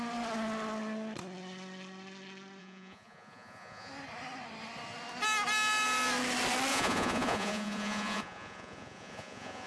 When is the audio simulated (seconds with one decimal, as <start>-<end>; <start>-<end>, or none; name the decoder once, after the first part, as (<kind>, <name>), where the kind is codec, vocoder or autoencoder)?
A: 2.6-3.9 (vocoder, Vocos); 6.7-9.7